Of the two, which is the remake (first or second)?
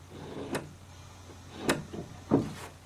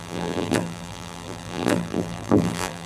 second